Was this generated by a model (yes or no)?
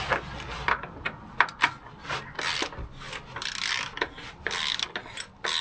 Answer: no